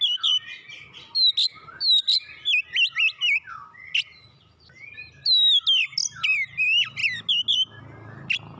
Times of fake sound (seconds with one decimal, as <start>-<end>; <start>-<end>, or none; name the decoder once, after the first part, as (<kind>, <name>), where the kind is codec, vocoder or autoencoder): none